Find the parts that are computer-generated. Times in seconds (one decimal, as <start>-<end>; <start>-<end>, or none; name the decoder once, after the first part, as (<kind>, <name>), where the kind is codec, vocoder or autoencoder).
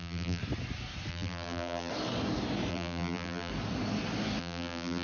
0.0-0.4 (vocoder, BigVGAN v2); 1.1-1.9; 2.7-3.5; 4.4-5.0